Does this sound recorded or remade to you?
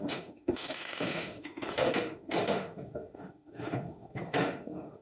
remade